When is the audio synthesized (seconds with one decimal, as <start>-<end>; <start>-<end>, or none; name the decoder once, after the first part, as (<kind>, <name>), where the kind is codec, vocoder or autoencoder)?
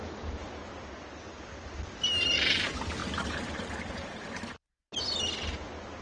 none